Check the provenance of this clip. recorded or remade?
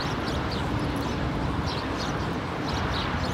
recorded